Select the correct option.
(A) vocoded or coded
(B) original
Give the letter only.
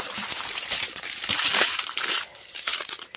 A